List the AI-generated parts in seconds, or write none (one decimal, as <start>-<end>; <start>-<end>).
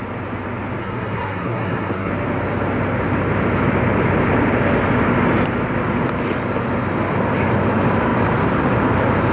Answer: 0.8-2.1